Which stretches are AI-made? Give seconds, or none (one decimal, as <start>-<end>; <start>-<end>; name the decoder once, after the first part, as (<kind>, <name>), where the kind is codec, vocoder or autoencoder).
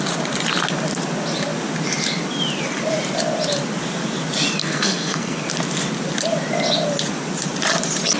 4.6-5.4 (codec, SNAC)